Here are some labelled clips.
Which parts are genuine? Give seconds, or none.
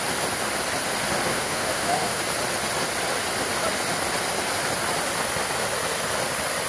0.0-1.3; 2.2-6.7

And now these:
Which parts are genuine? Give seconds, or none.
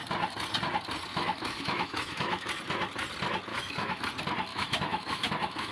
0.0-1.1; 2.5-3.5; 4.0-4.5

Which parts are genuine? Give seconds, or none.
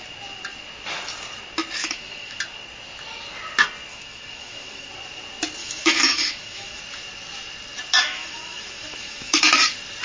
0.0-1.8; 2.4-3.9; 4.9-5.6; 6.8-8.0; 9.4-10.0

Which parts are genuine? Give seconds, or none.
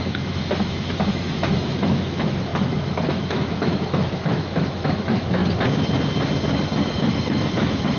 5.4-6.8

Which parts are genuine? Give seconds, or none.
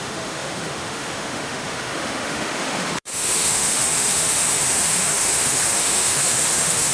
none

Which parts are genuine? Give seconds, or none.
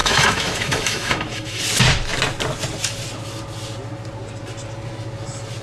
1.6-5.6